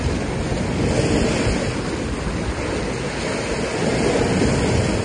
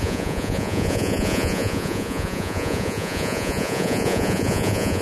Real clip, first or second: first